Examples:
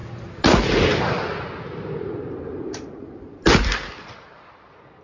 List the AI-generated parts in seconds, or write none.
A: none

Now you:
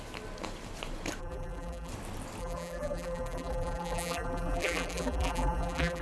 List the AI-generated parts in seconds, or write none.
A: 1.2-1.9 (vocoder, BigVGAN v2); 2.4-6.0